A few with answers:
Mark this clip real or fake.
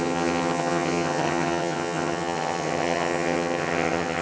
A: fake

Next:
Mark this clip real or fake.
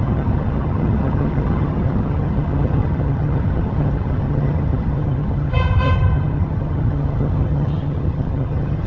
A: fake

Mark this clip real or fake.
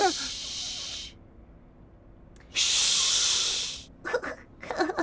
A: real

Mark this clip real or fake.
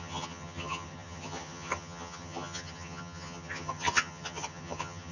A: fake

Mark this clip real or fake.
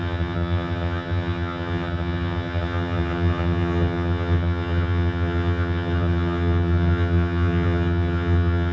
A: fake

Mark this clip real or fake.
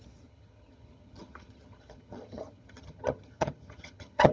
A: fake